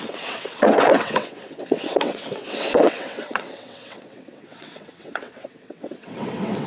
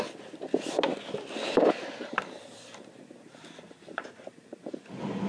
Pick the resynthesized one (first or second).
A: first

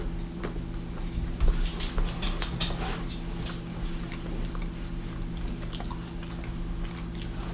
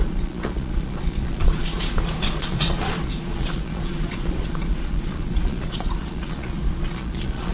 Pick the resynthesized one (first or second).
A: second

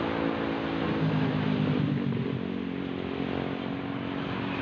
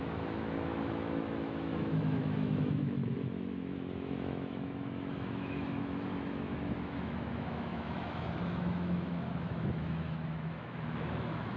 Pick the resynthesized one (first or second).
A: second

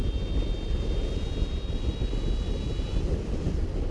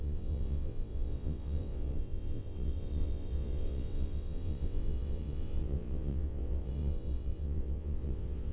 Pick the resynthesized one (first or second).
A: second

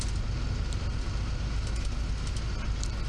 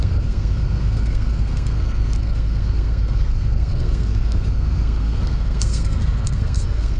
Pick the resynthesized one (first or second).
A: second